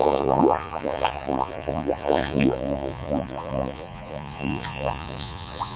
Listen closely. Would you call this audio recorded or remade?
remade